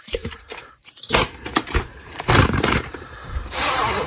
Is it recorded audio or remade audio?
remade